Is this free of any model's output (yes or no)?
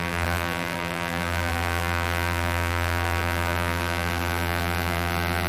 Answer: no